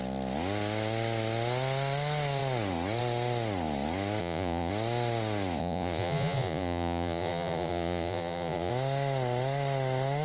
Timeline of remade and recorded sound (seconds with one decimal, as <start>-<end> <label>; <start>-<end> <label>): 0.0-4.2 recorded; 4.2-4.7 remade; 4.7-5.6 recorded; 5.6-8.7 remade; 8.7-10.2 recorded